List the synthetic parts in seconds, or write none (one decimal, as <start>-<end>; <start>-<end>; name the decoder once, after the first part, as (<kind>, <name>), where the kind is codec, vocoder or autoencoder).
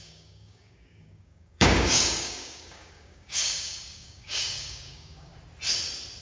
0.0-5.3 (codec, DAC)